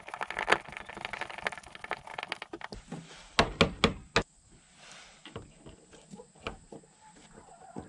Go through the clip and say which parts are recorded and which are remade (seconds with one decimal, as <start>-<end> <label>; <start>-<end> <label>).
0.0-7.9 recorded